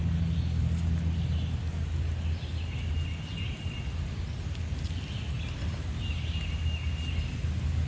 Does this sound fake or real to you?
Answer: real